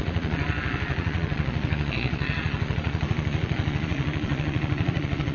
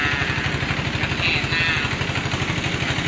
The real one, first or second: second